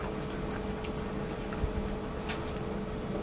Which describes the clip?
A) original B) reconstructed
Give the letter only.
A